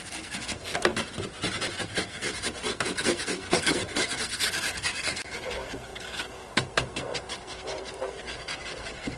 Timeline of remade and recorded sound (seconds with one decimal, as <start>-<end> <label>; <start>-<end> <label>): 0.0-0.9 remade; 0.9-1.8 recorded; 1.8-9.2 remade